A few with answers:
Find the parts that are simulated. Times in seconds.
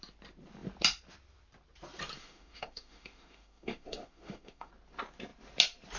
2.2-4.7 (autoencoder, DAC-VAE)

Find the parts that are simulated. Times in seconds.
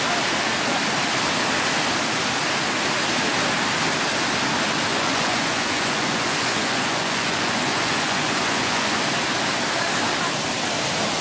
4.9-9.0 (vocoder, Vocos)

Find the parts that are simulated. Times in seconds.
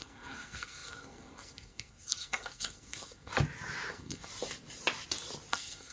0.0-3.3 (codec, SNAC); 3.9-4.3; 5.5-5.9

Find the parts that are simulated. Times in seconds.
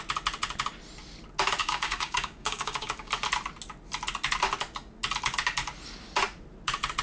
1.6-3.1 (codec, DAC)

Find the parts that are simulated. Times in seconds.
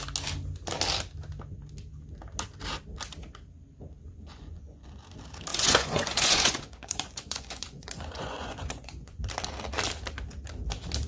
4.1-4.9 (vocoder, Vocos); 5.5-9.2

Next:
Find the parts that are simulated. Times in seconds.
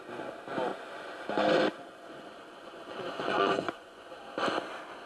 0.7-1.2 (vocoder, Vocos); 1.7-4.1